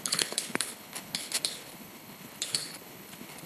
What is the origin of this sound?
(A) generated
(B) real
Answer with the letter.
A